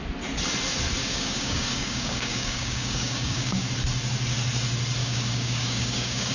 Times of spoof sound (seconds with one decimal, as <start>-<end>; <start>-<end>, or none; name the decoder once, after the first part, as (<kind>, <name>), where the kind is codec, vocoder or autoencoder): 1.0-3.7 (codec, DAC); 5.0-6.3